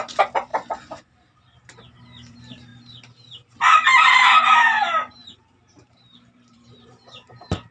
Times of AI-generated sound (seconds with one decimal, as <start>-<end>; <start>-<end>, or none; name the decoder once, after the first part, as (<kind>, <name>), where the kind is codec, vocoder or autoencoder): 0.0-0.5 (vocoder, BigVGAN v2); 2.3-2.7; 4.4-7.7